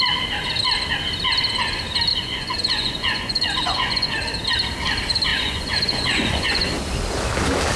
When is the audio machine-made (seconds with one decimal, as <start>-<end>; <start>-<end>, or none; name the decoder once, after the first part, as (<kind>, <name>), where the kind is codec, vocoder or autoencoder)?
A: 2.1-4.1 (vocoder, Vocos); 5.3-6.7